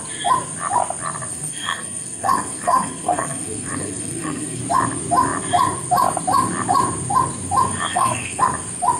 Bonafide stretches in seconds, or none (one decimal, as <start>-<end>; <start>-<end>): 0.0-1.3; 4.6-7.9; 8.4-9.0